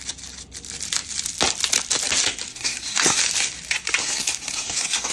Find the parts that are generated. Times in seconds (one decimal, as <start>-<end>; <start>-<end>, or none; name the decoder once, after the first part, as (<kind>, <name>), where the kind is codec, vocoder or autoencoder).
2.5-3.2 (codec, SNAC); 4.0-5.1